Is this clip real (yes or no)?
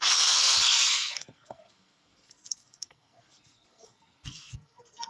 no